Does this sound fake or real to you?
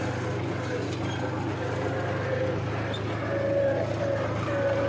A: real